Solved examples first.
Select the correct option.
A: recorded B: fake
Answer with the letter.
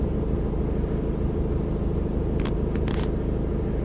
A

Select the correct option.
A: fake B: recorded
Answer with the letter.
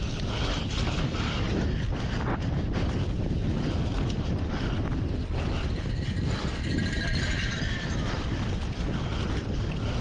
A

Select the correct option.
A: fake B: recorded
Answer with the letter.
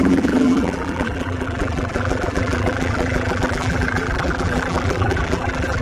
A